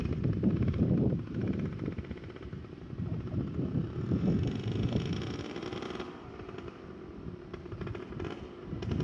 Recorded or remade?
remade